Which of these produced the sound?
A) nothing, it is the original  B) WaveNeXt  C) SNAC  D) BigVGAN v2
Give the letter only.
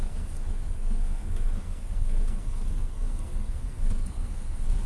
C